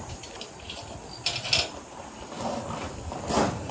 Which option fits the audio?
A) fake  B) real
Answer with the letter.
B